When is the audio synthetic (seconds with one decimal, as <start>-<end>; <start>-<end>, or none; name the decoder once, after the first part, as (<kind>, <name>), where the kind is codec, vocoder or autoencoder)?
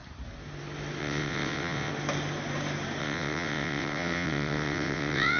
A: 1.0-1.9 (vocoder, WaveNeXt); 3.0-5.4